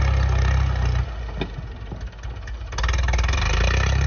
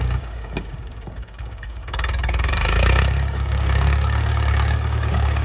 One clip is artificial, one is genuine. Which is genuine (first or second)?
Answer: first